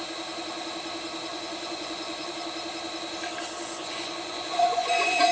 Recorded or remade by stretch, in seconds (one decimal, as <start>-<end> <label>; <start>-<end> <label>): 0.0-1.3 recorded; 1.3-2.3 remade; 2.3-3.6 recorded; 3.6-5.3 remade